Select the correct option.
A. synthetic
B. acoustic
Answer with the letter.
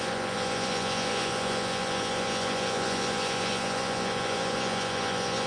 A